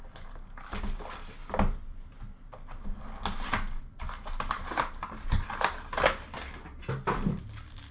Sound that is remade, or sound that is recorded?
recorded